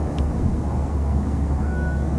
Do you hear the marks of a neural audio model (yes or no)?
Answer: yes